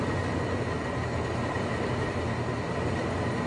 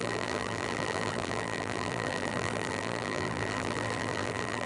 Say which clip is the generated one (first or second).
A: second